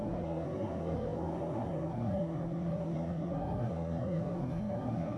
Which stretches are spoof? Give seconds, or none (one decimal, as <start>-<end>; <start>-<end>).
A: 0.0-5.2